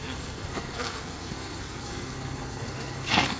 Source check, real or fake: fake